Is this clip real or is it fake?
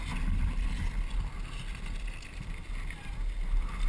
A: real